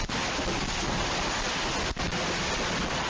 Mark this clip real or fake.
real